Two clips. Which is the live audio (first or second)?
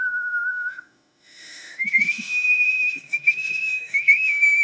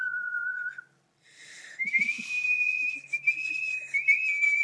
second